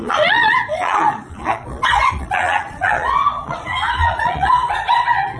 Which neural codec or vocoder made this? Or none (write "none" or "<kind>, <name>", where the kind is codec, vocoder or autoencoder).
vocoder, Vocos